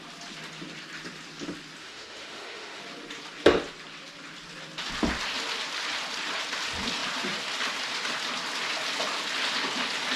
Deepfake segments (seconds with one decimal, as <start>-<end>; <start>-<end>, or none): 1.8-2.8